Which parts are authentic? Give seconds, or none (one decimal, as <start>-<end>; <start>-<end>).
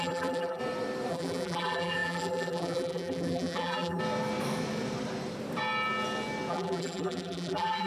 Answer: 0.6-1.1; 4.0-6.5